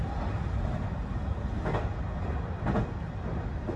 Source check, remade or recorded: recorded